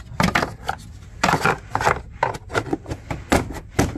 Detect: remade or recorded recorded